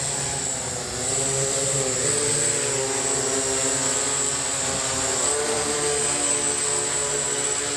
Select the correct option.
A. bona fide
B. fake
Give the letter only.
A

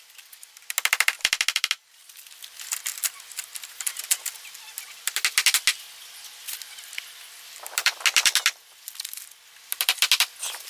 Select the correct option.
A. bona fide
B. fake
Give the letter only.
A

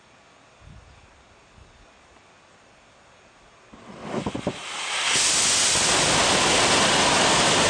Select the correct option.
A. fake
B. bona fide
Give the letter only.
B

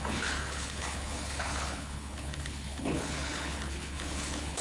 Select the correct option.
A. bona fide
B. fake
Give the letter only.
B